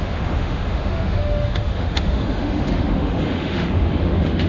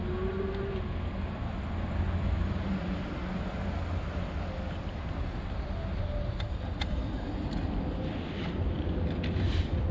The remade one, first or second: first